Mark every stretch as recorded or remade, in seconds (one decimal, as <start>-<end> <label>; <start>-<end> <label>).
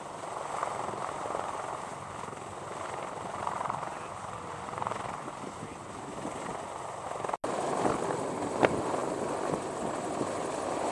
0.0-10.9 recorded